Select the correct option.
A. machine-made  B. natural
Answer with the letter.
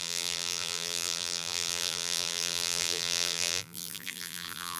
A